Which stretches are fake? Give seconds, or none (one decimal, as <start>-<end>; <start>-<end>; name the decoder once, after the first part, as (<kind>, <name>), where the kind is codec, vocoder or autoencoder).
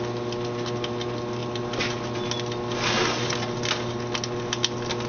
none